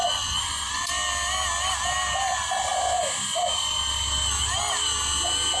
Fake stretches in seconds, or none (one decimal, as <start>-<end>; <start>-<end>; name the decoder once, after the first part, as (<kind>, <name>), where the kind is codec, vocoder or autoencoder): 0.0-0.9 (vocoder, Vocos)